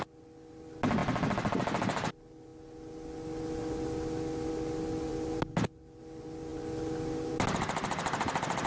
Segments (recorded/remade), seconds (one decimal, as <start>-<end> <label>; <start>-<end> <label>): 0.0-8.7 recorded